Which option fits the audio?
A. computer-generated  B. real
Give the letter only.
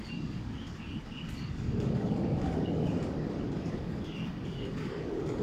A